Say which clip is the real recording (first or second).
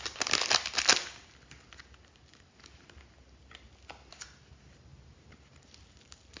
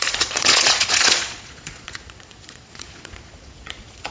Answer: first